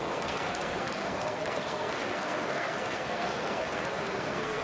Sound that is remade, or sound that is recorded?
remade